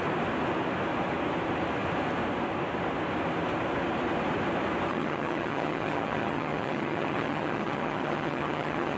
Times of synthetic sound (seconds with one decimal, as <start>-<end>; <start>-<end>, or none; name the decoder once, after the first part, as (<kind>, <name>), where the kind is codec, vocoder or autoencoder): 4.9-9.0 (vocoder, HiFi-GAN)